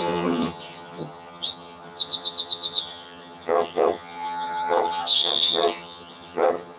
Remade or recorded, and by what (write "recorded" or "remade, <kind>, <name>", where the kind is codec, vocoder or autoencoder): remade, vocoder, HiFi-GAN